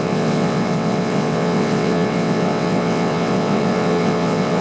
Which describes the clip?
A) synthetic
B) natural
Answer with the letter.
A